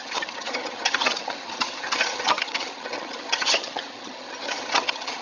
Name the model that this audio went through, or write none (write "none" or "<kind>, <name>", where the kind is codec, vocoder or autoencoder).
vocoder, HiFi-GAN